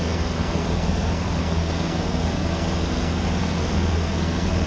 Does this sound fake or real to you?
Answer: fake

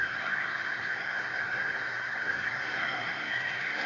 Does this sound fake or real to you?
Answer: fake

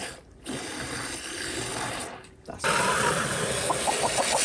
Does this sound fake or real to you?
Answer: real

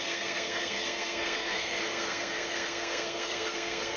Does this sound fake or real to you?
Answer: fake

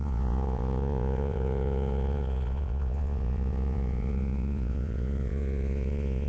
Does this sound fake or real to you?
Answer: fake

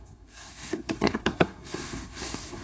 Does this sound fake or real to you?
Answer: fake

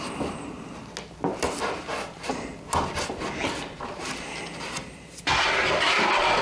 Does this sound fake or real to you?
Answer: real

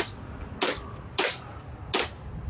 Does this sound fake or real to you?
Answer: real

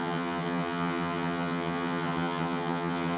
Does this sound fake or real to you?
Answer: fake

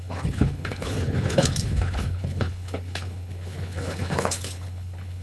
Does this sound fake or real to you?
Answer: fake